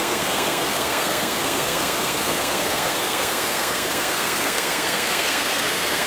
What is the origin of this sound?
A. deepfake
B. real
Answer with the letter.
A